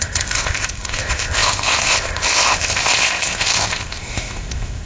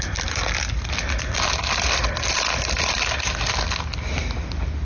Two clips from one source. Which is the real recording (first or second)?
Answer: second